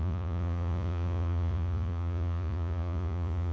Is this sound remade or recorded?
remade